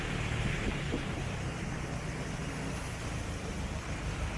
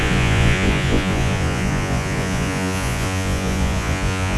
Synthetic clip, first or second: second